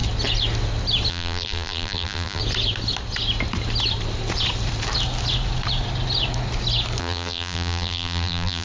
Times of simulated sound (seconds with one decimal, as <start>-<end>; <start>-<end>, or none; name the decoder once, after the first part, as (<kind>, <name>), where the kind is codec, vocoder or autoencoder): 1.1-2.4 (vocoder, BigVGAN v2); 7.0-8.6